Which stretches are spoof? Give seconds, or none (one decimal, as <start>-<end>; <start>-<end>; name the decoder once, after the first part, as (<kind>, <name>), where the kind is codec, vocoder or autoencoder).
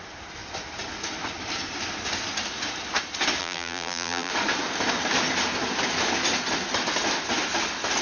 3.4-4.3 (vocoder, BigVGAN v2)